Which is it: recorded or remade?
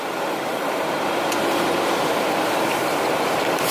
recorded